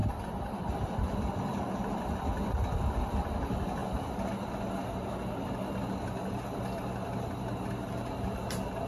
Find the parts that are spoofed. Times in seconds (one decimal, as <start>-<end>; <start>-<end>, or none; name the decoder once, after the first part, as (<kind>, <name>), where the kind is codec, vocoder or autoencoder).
none